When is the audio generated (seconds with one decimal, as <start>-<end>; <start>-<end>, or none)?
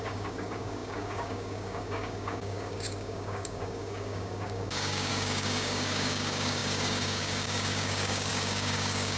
0.0-9.2